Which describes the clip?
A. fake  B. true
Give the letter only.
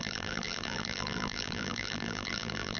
A